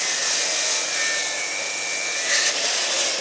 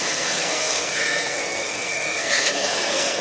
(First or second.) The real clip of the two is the first